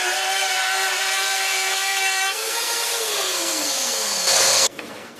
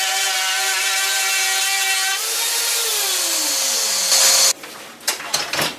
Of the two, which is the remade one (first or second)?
first